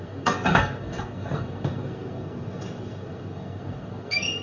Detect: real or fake fake